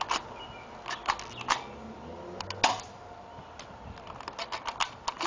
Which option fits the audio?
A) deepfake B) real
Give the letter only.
B